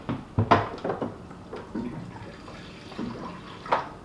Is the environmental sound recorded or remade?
recorded